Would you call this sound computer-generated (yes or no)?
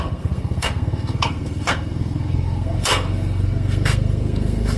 yes